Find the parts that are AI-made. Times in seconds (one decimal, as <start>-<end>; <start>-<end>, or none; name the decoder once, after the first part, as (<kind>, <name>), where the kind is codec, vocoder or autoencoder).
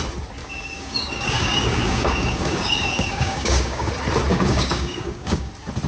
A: 0.4-3.9 (codec, DAC); 4.3-5.5